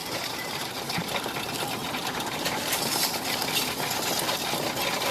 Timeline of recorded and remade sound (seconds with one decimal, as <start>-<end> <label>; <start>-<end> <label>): 0.0-1.2 remade; 1.2-1.8 recorded; 1.8-2.8 remade; 2.8-5.1 recorded